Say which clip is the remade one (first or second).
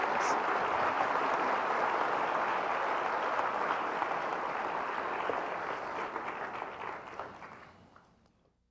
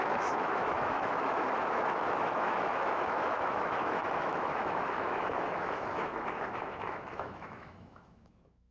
second